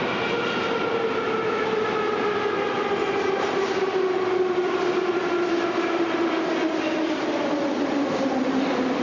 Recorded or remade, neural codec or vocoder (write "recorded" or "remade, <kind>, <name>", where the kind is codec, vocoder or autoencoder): recorded